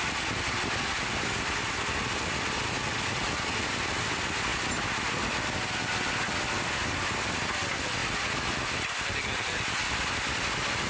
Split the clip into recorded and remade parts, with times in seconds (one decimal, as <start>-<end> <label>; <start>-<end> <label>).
0.0-10.9 recorded